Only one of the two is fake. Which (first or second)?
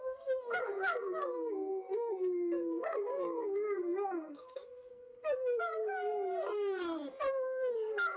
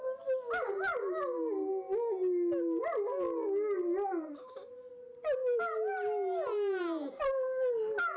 first